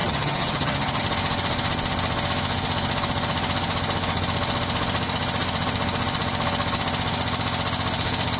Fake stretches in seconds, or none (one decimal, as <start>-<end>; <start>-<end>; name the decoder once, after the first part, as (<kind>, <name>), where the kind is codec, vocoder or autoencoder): 0.0-1.0 (vocoder, HiFi-GAN)